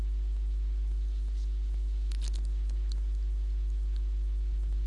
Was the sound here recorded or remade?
recorded